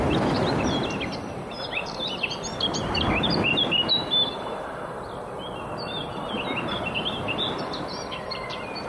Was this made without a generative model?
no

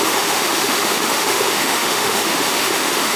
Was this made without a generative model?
no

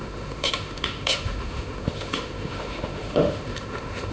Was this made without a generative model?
no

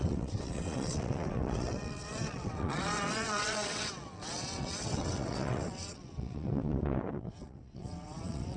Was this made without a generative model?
no